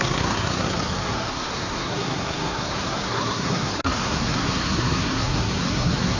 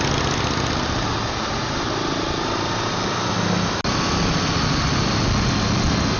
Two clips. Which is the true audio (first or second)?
second